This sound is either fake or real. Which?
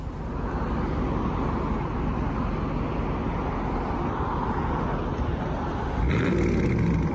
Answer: real